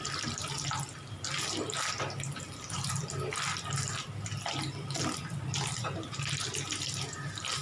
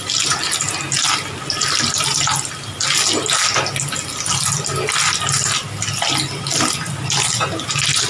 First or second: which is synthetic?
first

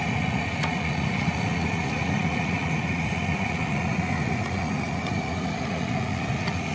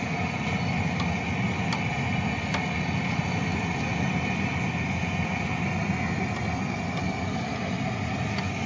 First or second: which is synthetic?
first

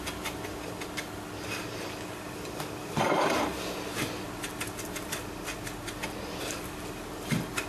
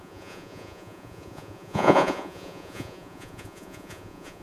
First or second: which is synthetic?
second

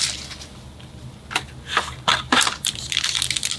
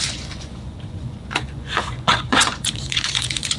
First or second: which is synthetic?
second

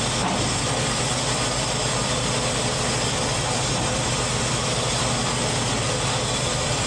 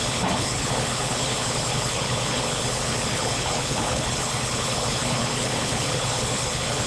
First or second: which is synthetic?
second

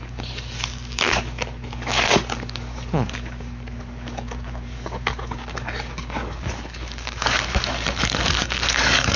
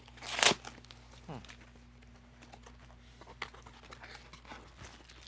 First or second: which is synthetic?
first